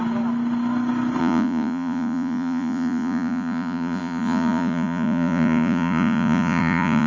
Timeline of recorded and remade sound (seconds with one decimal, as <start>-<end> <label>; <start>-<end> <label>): 0.0-1.2 recorded; 1.2-7.1 remade